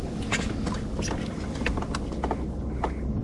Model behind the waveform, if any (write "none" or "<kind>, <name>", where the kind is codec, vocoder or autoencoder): none